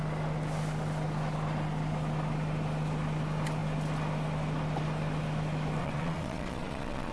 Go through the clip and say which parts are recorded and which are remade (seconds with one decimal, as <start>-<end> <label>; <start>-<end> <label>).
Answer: 0.0-5.8 recorded; 5.8-7.1 remade